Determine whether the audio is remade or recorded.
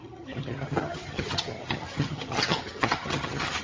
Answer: remade